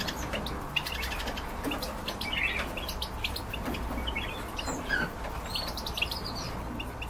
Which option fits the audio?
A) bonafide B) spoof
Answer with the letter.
A